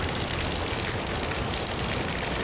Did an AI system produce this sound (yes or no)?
no